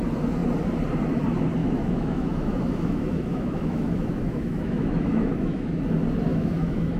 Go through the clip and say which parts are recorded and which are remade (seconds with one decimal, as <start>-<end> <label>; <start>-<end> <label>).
0.0-1.6 recorded; 1.6-5.8 remade; 5.8-6.3 recorded; 6.3-7.0 remade